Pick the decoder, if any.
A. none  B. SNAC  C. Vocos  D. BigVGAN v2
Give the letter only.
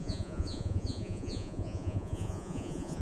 C